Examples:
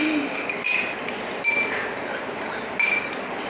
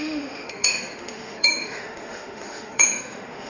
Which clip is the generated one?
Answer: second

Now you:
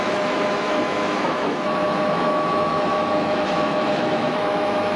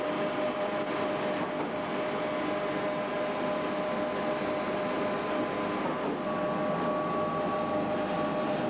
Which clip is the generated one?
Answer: first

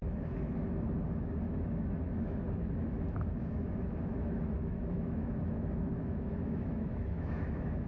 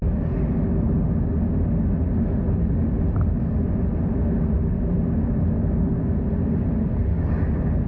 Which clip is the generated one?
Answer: first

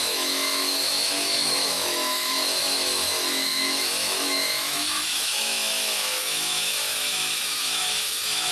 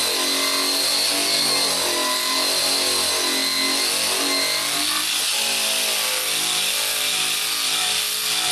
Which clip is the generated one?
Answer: first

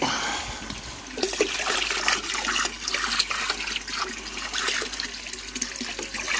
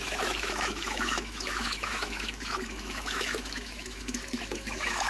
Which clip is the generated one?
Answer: second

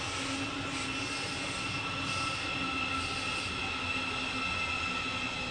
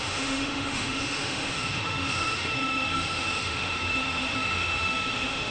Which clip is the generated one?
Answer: second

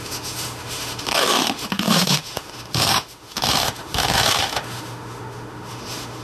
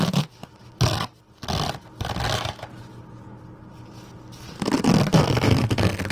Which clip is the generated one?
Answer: first